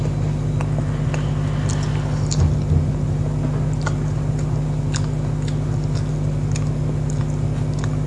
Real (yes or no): yes